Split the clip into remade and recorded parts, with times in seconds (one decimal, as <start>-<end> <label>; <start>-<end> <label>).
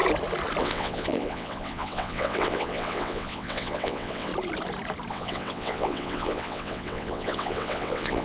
0.0-0.6 recorded; 0.6-4.3 remade; 4.3-5.1 recorded; 5.1-8.2 remade